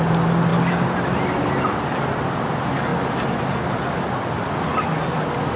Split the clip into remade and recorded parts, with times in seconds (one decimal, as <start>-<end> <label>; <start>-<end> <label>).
0.0-5.6 recorded